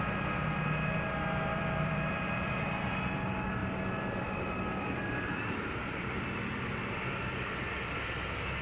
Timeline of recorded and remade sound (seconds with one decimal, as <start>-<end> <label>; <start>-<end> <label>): 0.0-1.5 recorded; 1.5-2.5 remade; 2.5-3.6 recorded; 3.6-7.7 remade; 7.7-8.6 recorded